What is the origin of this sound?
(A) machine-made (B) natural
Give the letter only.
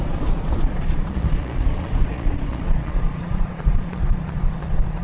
A